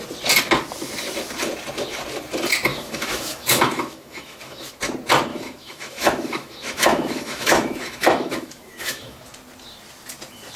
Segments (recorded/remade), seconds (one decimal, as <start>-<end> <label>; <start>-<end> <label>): 0.0-2.7 recorded; 2.7-4.7 remade; 4.7-5.3 recorded; 5.3-9.2 remade; 9.2-10.6 recorded